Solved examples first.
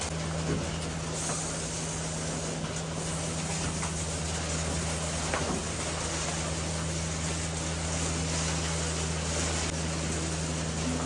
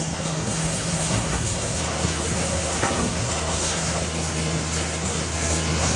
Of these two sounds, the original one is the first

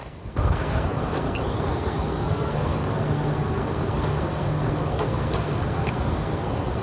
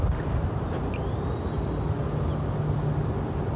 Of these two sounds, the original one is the second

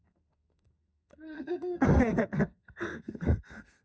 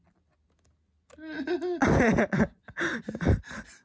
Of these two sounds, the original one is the second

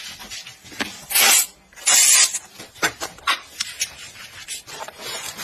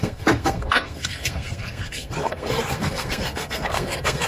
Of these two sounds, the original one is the first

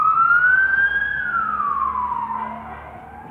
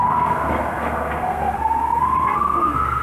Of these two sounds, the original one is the first